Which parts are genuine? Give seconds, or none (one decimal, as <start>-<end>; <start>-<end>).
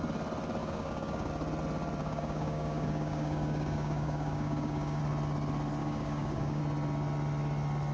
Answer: 0.0-0.6; 1.3-2.0; 5.0-5.8; 6.6-7.9